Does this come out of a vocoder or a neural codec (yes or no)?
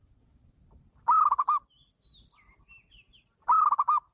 no